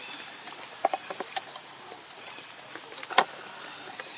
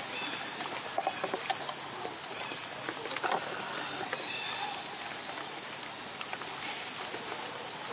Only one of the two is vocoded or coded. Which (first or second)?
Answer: first